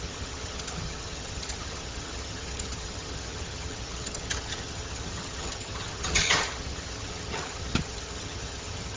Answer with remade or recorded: remade